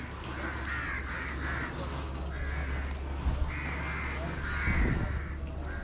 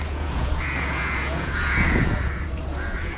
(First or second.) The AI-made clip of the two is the second